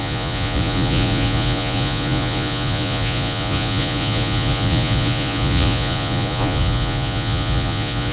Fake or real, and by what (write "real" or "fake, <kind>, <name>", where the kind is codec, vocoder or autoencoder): fake, vocoder, Vocos